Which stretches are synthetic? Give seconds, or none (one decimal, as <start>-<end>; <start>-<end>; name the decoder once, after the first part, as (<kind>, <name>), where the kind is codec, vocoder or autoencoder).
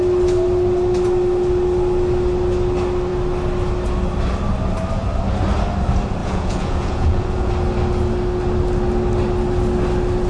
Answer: 6.2-7.5 (vocoder, Vocos)